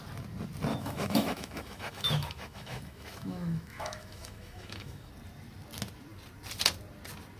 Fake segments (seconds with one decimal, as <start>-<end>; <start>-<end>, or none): 0.7-5.1